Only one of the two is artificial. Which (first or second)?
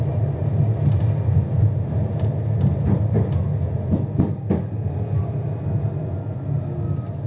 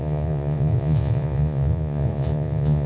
second